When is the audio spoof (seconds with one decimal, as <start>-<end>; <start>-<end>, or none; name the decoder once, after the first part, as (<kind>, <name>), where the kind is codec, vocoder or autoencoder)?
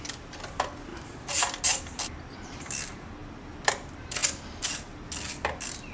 0.9-1.6 (vocoder, BigVGAN v2)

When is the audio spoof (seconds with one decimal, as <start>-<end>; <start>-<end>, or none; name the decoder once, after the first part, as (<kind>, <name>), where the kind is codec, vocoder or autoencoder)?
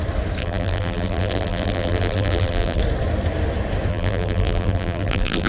0.4-2.8 (vocoder, BigVGAN v2); 3.9-5.5